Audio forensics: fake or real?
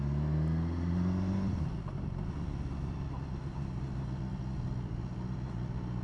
real